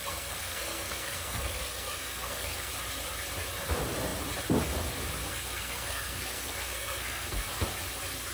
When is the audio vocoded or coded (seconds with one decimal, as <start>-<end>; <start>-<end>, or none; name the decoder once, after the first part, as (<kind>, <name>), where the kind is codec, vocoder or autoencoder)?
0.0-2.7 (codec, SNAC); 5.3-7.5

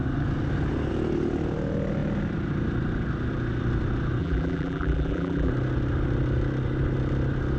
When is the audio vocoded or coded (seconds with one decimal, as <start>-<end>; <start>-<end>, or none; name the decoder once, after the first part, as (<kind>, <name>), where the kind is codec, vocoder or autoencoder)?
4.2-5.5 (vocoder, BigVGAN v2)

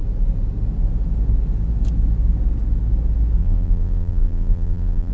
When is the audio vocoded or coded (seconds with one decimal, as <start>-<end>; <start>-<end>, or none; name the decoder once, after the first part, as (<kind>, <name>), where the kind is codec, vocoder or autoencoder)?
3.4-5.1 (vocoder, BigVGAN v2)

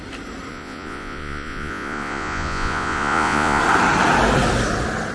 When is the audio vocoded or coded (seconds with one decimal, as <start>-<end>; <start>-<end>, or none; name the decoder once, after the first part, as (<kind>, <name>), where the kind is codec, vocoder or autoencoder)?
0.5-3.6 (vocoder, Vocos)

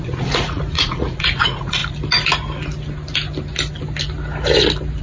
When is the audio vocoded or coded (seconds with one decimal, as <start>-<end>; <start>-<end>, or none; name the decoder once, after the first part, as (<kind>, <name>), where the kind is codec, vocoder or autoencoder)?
0.0-1.8 (vocoder, Vocos)